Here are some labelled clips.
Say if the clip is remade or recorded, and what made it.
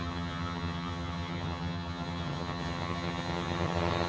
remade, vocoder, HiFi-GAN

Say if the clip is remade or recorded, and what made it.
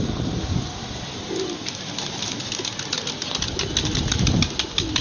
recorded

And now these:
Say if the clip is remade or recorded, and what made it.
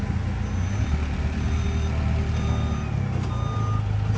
recorded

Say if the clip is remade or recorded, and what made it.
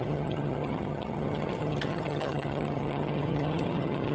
remade, vocoder, HiFi-GAN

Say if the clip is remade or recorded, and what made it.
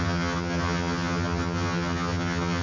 remade, vocoder, HiFi-GAN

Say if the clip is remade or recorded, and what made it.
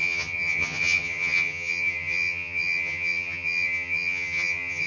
remade, vocoder, HiFi-GAN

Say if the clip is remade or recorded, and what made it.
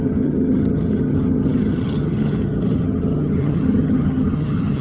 remade, vocoder, HiFi-GAN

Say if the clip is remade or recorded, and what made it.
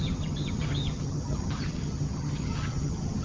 remade, vocoder, HiFi-GAN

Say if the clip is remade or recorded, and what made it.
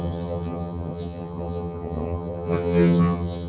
remade, vocoder, HiFi-GAN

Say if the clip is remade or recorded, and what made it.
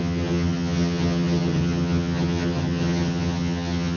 remade, vocoder, HiFi-GAN